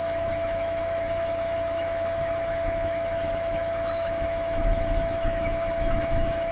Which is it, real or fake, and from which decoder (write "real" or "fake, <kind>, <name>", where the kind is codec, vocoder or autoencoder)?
fake, autoencoder, DAC-VAE